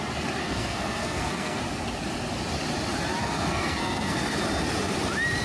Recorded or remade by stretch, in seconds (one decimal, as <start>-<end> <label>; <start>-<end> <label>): 0.0-0.4 recorded; 0.4-1.6 remade; 1.6-3.2 recorded; 3.2-4.4 remade; 4.4-5.4 recorded